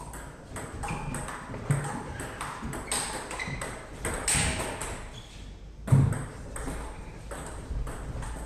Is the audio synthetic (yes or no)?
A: no